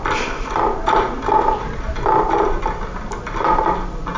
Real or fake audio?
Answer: real